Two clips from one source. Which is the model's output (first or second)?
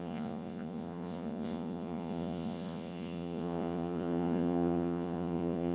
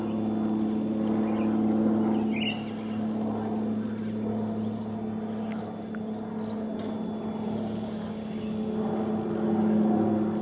first